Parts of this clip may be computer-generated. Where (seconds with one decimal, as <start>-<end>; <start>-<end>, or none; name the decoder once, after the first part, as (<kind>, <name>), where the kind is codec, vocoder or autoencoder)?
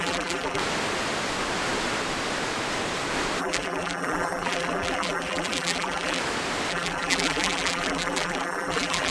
0.0-0.6 (vocoder, BigVGAN v2); 3.4-6.2; 6.7-9.1